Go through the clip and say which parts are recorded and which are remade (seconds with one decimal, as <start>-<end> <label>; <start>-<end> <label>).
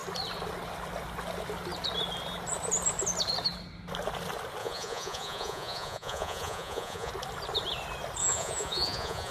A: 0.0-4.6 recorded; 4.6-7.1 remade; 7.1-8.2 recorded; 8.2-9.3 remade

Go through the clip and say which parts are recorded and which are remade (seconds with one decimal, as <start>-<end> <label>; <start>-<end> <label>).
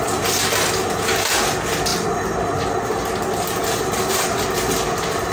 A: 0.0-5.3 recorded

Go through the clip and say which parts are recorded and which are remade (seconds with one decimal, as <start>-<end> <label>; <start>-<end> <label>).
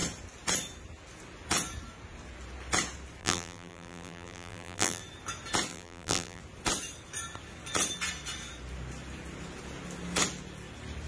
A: 0.0-3.2 recorded; 3.2-5.0 remade; 5.0-5.7 recorded; 5.7-6.4 remade; 6.4-11.1 recorded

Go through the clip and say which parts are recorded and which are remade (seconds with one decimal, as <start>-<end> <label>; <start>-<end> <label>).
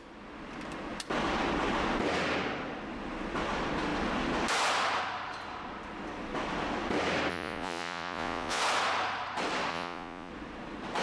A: 0.0-7.3 recorded; 7.3-8.6 remade; 8.6-9.7 recorded; 9.7-10.3 remade; 10.3-11.0 recorded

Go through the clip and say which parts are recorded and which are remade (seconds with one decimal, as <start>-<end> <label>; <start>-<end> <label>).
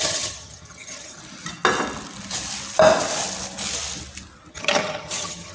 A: 0.0-1.2 remade; 1.2-4.5 recorded; 4.5-5.5 remade